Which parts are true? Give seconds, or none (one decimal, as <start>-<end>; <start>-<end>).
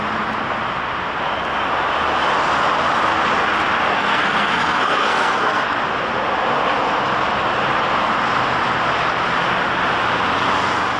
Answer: 0.0-3.9; 5.8-11.0